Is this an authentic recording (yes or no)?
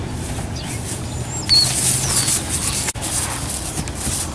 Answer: yes